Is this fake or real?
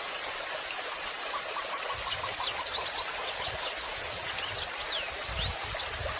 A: real